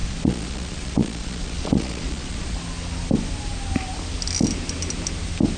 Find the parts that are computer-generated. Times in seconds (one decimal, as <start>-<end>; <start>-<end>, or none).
0.0-2.6